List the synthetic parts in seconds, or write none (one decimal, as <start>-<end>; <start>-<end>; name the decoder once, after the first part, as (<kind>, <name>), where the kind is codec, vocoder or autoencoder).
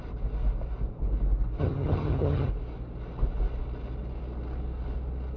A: 1.6-2.5 (vocoder, HiFi-GAN)